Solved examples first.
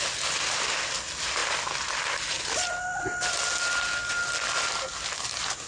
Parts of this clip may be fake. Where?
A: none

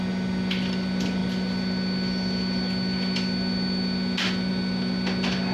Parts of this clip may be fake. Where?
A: none

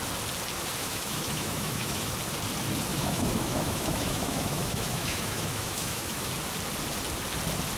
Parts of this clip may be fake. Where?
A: 0.8-2.1 (autoencoder, DAC-VAE); 2.9-6.3

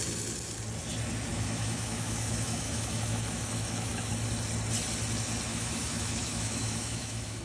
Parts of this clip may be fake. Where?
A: 1.3-4.1 (autoencoder, DAC-VAE); 5.5-7.4

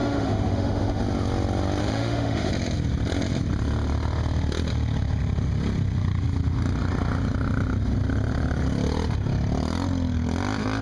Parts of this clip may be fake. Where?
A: 0.0-1.0 (autoencoder, DAC-VAE); 1.8-2.5

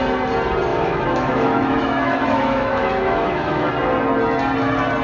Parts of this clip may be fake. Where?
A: 0.7-3.7 (autoencoder, DAC-VAE)